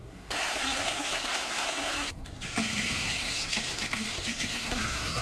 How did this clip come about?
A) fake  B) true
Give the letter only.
A